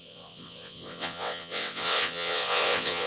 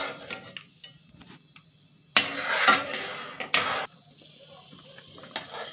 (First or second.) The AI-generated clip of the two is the first